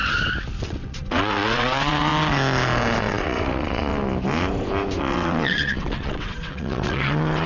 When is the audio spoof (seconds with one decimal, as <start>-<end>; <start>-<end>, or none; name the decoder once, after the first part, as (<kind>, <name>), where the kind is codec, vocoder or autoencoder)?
0.6-2.1 (vocoder, WaveNeXt); 3.0-3.9; 5.0-7.5